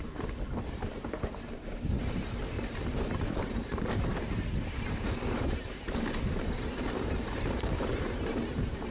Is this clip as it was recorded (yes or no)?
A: no